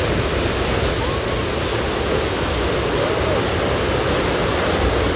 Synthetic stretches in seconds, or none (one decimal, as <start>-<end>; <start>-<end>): none